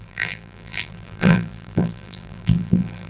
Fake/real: fake